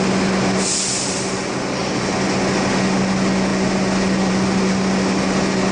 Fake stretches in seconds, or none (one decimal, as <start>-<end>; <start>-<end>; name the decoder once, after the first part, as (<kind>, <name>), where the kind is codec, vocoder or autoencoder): none